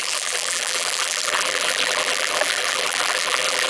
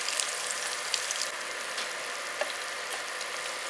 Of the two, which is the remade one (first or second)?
first